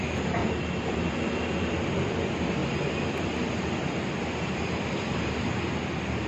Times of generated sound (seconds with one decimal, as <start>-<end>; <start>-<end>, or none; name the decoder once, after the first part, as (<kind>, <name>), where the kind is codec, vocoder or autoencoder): 0.0-0.4 (vocoder, BigVGAN v2); 0.9-6.3